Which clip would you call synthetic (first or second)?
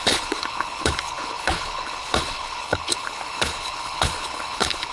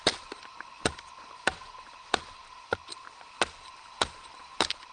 first